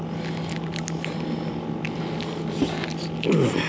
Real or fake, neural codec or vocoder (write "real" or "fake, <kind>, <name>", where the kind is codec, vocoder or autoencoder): real